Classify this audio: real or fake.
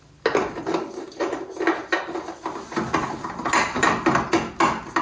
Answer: real